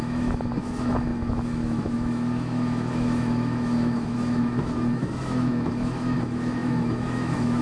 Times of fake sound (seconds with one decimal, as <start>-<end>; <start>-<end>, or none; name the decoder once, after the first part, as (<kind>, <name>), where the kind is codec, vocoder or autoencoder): 0.0-7.6 (autoencoder, DAC-VAE)